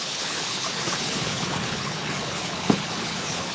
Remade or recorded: remade